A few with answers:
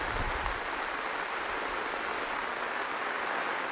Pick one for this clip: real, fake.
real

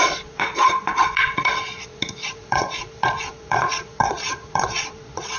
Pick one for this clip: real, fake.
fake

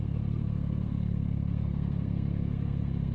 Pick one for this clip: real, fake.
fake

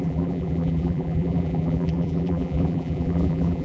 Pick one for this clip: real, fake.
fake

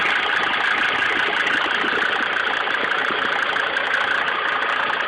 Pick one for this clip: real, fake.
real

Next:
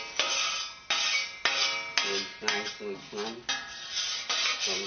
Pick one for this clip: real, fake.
real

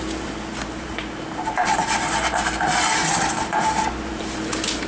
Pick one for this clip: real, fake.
fake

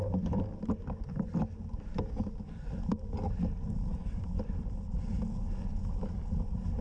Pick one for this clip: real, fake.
real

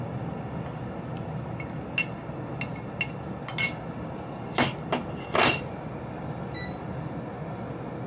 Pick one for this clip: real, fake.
real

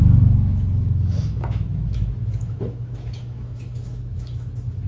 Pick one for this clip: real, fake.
fake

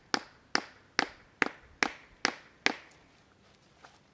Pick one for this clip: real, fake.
real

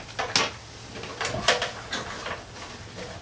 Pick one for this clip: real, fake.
real